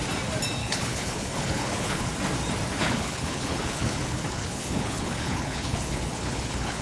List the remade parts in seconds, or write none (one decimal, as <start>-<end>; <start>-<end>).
0.6-2.1; 2.8-6.8